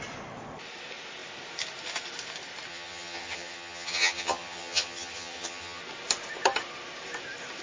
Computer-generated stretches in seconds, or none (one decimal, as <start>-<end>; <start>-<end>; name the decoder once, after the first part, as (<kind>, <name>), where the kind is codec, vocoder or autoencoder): 2.7-5.8 (vocoder, HiFi-GAN)